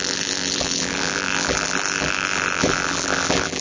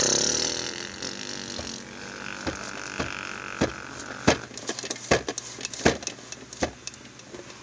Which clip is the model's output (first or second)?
first